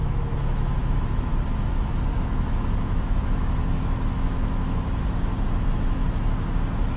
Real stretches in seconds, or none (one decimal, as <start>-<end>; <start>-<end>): 1.3-2.1; 5.3-7.0